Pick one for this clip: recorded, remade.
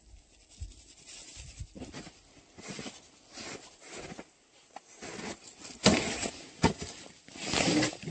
recorded